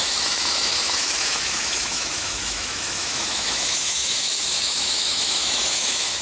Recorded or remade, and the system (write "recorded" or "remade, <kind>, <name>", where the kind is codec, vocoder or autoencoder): remade, autoencoder, DAC-VAE